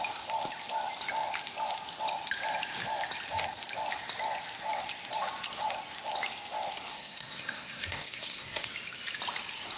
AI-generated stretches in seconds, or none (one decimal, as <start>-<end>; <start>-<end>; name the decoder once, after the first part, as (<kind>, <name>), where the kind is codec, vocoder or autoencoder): 6.9-8.7 (codec, SNAC)